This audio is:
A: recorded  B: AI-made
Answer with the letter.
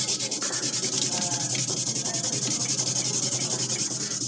A